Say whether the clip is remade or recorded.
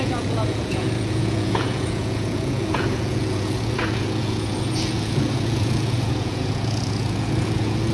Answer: remade